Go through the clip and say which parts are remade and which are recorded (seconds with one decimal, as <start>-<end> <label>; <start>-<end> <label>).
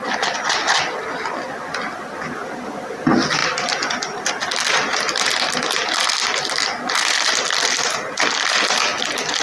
0.0-9.4 recorded